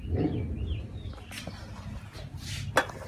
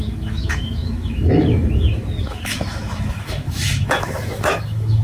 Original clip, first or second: first